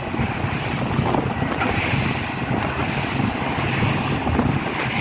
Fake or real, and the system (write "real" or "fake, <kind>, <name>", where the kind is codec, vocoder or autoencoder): real